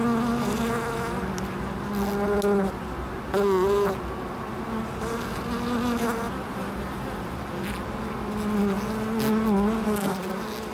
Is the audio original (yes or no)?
yes